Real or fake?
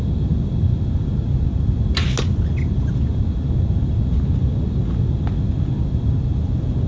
real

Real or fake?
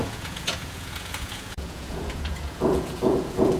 fake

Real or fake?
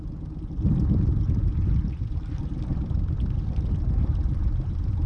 real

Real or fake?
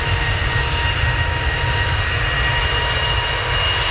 real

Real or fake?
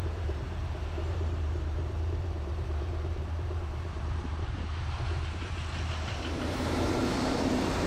fake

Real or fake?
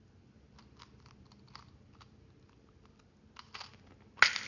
real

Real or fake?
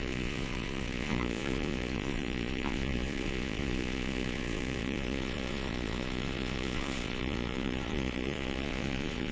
fake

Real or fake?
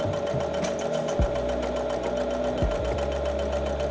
real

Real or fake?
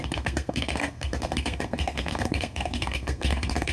fake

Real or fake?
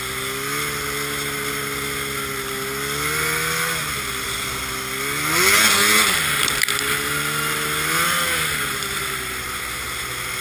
real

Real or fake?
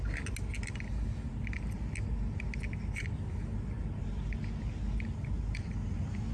real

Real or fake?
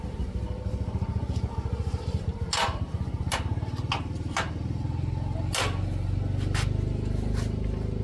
real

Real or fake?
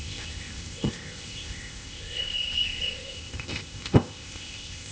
fake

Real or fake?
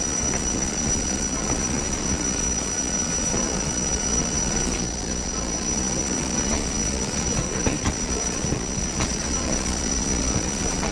fake